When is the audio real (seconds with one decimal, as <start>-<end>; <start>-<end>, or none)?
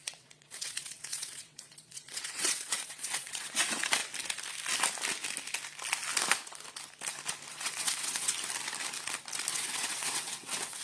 4.0-7.5; 8.3-9.5